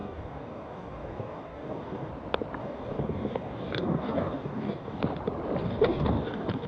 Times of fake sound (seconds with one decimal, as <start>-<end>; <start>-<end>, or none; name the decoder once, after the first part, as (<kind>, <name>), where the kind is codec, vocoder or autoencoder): 0.0-2.1 (codec, DAC); 2.6-5.0; 5.6-6.7